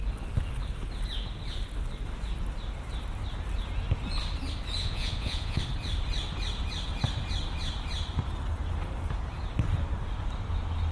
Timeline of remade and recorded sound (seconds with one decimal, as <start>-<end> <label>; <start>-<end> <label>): 0.0-4.8 recorded; 4.8-5.6 remade; 5.6-10.9 recorded